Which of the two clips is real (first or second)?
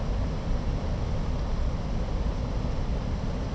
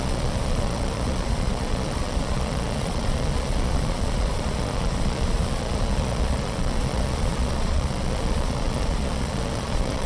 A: first